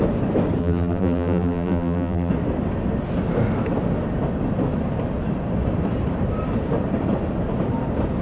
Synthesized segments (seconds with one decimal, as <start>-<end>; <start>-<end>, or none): 0.6-2.3